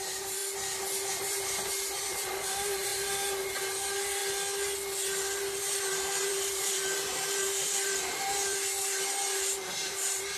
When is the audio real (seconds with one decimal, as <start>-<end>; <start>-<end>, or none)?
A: 0.4-1.1; 4.2-5.6